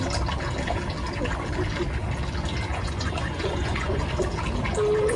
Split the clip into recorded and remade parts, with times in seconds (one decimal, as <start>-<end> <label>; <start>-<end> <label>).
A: 0.0-2.7 recorded; 2.7-4.0 remade; 4.0-5.2 recorded